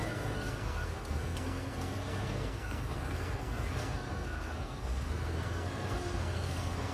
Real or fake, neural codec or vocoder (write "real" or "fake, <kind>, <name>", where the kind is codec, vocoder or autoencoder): fake, codec, SNAC